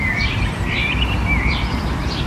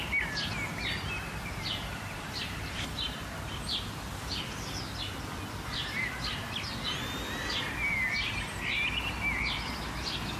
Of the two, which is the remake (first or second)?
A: first